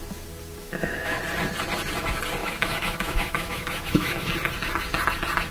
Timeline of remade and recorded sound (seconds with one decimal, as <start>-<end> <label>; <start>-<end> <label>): 0.0-0.6 recorded; 0.6-1.2 remade; 1.2-2.4 recorded; 2.4-4.3 remade; 4.3-5.5 recorded